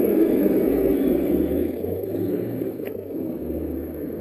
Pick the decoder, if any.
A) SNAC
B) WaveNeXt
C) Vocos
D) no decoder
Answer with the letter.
A